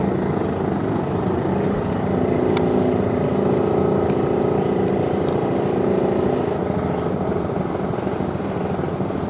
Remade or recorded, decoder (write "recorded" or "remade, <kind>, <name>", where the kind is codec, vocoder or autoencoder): recorded